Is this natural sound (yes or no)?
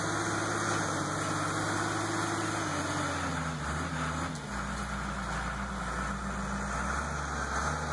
yes